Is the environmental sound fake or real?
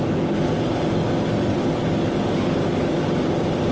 real